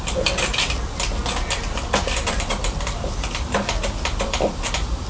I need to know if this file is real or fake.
fake